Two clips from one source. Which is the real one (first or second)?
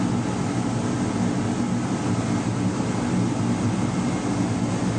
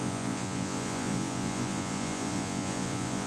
first